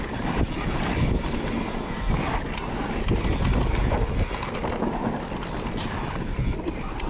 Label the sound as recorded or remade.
recorded